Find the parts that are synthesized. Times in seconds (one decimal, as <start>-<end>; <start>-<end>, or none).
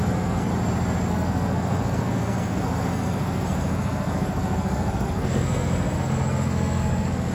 0.0-0.5; 1.1-7.3